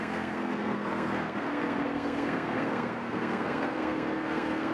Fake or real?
fake